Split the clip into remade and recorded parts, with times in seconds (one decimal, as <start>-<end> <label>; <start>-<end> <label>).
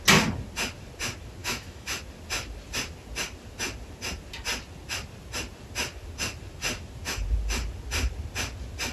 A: 0.0-1.4 recorded; 1.4-2.0 remade; 2.0-8.9 recorded